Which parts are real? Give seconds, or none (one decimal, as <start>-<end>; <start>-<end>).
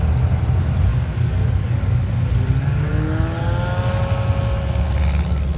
0.0-0.9; 2.1-2.9; 3.4-5.6